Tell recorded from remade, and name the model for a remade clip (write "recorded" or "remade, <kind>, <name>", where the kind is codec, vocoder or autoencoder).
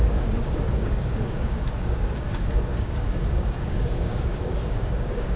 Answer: remade, codec, DAC